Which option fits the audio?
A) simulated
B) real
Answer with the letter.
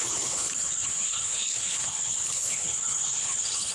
A